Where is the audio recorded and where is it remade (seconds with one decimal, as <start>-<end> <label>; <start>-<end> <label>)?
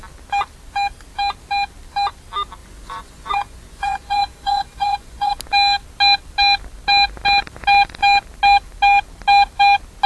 0.0-2.6 recorded; 2.6-5.3 remade; 5.3-10.1 recorded